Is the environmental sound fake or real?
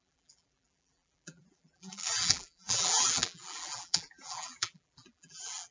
fake